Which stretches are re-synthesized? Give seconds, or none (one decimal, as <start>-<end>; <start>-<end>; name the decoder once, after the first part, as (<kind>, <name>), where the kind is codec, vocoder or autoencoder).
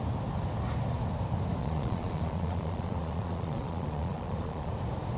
1.6-4.7 (vocoder, Vocos)